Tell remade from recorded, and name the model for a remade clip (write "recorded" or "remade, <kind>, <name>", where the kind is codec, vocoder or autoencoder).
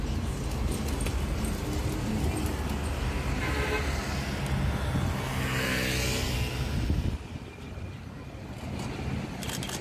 recorded